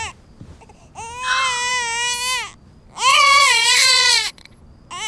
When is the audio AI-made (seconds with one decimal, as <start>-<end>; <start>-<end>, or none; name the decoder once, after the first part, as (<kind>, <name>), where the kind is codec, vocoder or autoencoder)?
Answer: 3.1-4.6 (vocoder, Vocos)